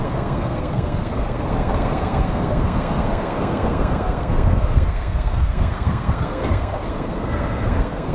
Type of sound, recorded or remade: remade